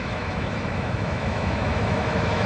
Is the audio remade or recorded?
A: remade